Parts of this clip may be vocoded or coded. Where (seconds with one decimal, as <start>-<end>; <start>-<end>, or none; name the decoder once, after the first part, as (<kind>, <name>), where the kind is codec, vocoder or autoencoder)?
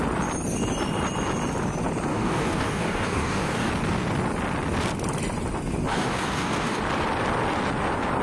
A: 2.1-3.7 (codec, DAC); 5.9-6.8